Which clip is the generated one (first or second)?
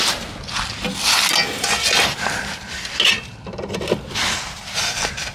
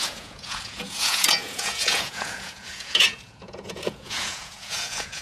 second